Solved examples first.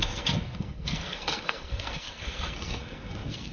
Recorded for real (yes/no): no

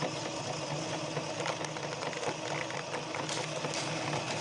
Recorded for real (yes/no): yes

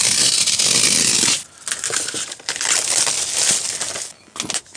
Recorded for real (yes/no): yes